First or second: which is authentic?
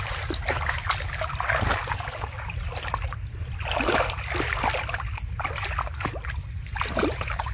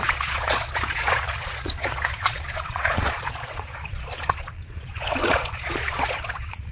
first